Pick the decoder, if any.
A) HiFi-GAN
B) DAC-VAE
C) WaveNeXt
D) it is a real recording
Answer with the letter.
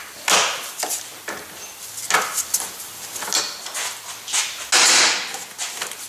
D